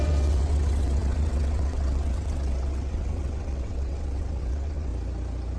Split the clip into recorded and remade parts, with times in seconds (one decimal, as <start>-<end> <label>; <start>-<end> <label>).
0.0-4.9 remade; 4.9-5.6 recorded